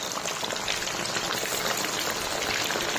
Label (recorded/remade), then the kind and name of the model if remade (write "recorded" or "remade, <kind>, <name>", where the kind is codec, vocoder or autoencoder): recorded